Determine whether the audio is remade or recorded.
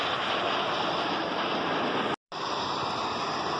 recorded